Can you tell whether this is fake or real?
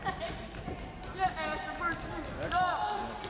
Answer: real